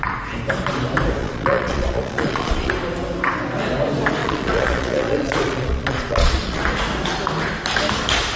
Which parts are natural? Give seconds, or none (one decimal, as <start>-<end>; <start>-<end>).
0.0-1.2; 2.7-4.2; 6.6-8.4